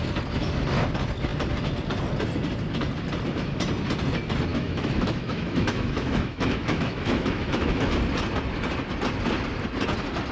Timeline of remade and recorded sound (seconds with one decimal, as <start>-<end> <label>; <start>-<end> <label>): 0.0-4.5 recorded; 4.5-8.0 remade; 8.0-10.3 recorded